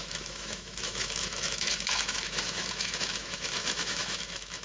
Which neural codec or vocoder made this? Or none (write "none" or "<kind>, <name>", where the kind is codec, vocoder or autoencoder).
autoencoder, DAC-VAE